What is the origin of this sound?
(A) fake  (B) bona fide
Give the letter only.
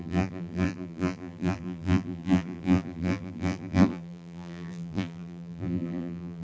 A